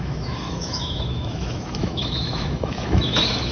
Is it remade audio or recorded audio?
remade